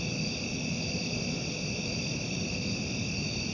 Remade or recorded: recorded